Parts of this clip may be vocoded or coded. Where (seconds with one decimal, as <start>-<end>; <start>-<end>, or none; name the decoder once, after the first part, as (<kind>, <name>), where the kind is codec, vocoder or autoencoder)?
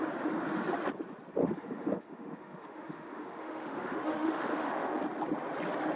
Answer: 1.4-5.0 (autoencoder, DAC-VAE)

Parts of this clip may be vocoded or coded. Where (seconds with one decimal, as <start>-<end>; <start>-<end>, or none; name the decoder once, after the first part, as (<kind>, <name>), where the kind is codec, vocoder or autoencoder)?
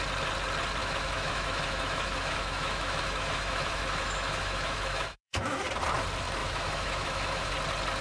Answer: 0.8-5.6 (autoencoder, DAC-VAE); 6.4-7.5